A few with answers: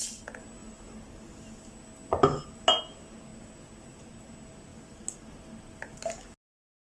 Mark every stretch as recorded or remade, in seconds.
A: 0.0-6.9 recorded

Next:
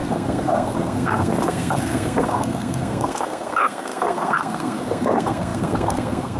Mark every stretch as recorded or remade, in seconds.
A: 0.0-6.4 remade

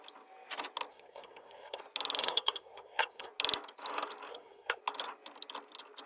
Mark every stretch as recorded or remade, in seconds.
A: 0.0-0.9 recorded; 0.9-1.8 remade; 1.8-2.2 recorded; 2.2-3.3 remade; 3.3-4.3 recorded; 4.3-4.8 remade; 4.8-6.1 recorded

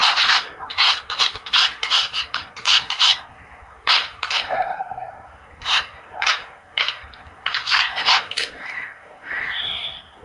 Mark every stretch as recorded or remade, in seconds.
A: 0.0-10.2 remade

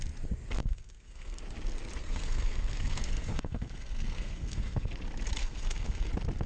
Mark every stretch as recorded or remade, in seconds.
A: 0.0-0.6 recorded; 0.6-1.4 remade; 1.4-2.0 recorded; 2.0-4.9 remade; 4.9-5.4 recorded; 5.4-6.1 remade; 6.1-6.5 recorded

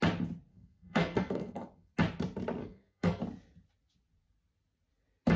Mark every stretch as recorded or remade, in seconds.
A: 0.0-0.5 recorded; 0.5-1.9 remade; 1.9-2.6 recorded; 2.6-3.2 remade; 3.2-5.4 recorded

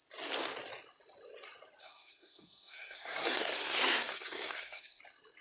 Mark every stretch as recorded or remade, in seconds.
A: 0.0-1.8 recorded; 1.8-5.0 remade; 5.0-5.4 recorded